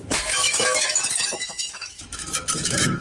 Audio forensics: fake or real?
fake